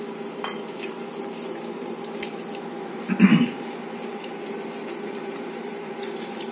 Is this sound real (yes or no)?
no